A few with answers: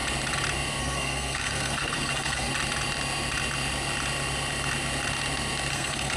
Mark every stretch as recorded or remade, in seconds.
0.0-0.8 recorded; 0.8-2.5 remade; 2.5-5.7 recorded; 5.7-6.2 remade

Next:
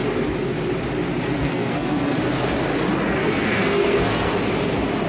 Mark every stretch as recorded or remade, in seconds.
0.0-1.4 recorded; 1.4-2.2 remade; 2.2-3.2 recorded; 3.2-4.3 remade; 4.3-5.1 recorded